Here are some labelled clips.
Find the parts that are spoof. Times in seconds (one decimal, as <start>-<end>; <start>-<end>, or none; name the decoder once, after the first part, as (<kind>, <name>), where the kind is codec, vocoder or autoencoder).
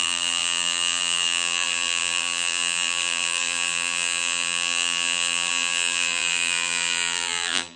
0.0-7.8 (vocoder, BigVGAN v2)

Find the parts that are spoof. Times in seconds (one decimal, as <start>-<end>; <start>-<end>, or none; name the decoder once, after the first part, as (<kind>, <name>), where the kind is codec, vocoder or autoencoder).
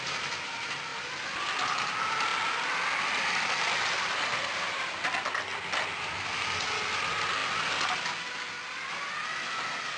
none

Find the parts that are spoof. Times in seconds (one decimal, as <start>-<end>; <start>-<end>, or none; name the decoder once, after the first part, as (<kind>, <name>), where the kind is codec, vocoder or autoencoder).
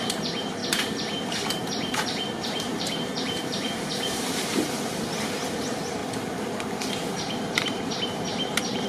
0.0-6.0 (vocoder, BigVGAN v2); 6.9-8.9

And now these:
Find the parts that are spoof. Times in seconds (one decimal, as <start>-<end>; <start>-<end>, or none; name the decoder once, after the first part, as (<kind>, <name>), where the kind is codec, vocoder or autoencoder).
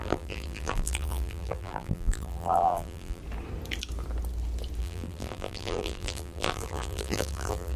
0.0-3.2 (vocoder, BigVGAN v2); 4.8-7.8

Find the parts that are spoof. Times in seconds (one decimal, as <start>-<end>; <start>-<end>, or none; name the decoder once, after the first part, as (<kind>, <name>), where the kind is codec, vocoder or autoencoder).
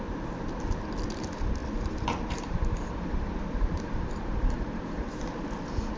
1.6-5.2 (vocoder, BigVGAN v2)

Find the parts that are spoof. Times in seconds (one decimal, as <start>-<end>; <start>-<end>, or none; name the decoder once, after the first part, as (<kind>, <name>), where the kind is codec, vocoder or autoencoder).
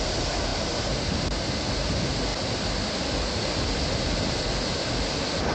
0.5-1.2 (vocoder, BigVGAN v2)